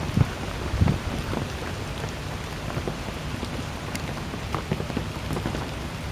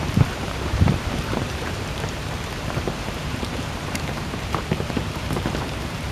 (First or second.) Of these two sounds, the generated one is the second